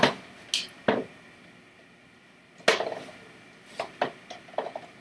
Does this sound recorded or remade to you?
recorded